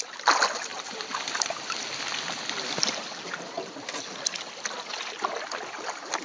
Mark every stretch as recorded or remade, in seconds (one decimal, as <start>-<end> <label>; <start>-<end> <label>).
0.0-6.2 recorded